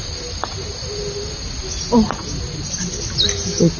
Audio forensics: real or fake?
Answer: real